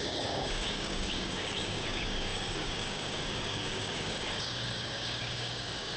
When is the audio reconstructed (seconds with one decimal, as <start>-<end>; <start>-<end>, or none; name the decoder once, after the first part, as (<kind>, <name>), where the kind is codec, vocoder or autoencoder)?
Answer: 0.0-6.0 (codec, DAC)